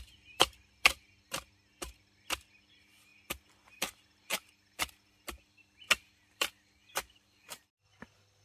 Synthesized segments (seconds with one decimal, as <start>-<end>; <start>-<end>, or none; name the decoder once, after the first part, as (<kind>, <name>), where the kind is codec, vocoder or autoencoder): 4.3-4.9 (vocoder, BigVGAN v2); 6.8-7.7